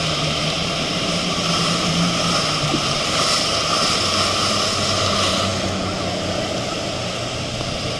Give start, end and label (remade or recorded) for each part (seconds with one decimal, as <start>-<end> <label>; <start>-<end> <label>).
0.0-0.6 recorded; 0.6-1.9 remade; 1.9-2.7 recorded; 2.7-3.4 remade; 3.4-8.0 recorded